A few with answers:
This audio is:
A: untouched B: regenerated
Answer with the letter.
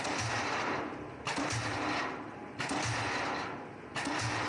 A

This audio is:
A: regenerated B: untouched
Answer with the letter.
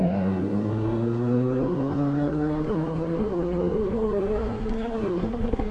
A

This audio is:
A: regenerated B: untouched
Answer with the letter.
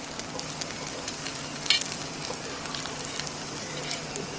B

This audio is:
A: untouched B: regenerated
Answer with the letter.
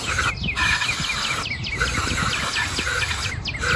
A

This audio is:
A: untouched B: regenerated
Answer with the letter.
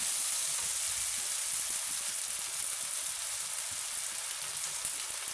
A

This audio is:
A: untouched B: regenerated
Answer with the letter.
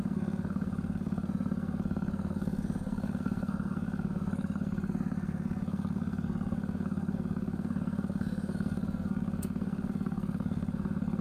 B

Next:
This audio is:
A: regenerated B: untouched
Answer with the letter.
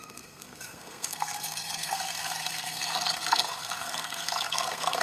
A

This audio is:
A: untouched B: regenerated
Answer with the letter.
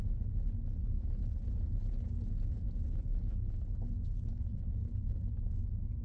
A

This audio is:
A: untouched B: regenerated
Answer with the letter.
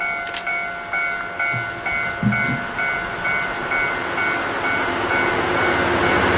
A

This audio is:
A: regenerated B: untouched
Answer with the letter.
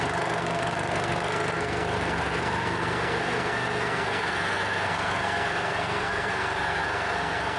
A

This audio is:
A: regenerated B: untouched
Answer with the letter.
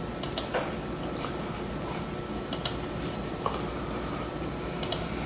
B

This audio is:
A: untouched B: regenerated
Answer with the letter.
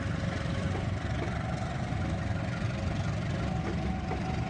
A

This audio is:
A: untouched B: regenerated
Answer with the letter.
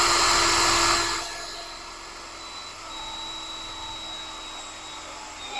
A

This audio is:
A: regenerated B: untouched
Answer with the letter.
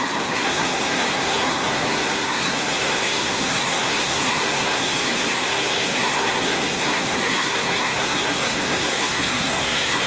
A